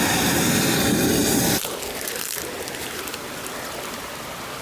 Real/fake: real